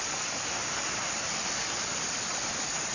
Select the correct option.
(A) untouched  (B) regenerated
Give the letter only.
A